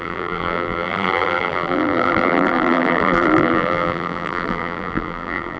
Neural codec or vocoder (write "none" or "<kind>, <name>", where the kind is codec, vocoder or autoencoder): vocoder, BigVGAN v2